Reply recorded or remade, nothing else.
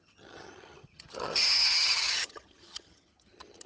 remade